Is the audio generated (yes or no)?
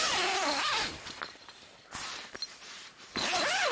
no